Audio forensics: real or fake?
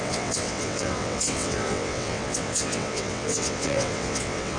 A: fake